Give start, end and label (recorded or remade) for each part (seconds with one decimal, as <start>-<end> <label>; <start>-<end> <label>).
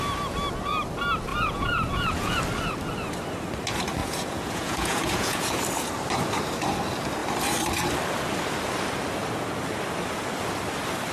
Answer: 0.0-1.3 recorded; 1.3-2.4 remade; 2.4-4.0 recorded; 4.0-5.6 remade; 5.6-11.1 recorded